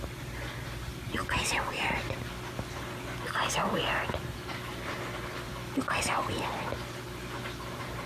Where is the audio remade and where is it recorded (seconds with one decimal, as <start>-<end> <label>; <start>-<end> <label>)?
0.0-8.1 recorded